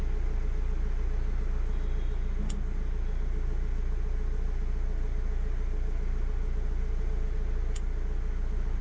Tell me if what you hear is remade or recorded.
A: recorded